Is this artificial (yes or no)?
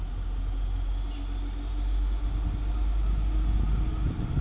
no